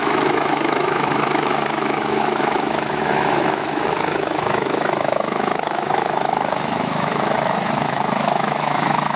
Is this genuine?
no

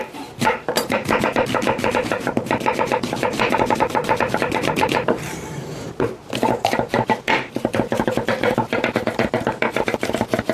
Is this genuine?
no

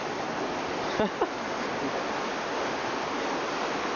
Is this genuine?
yes